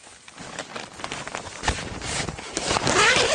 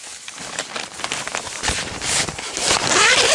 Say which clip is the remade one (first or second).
second